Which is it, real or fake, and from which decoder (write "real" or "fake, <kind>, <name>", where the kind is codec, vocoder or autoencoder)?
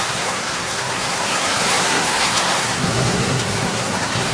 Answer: fake, codec, SNAC